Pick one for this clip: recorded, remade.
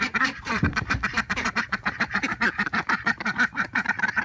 remade